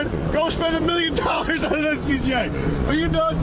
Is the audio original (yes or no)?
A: no